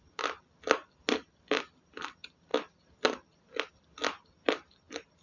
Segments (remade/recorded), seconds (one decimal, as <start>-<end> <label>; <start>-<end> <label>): 0.0-5.2 recorded